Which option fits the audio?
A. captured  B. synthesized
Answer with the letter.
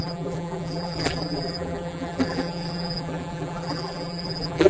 B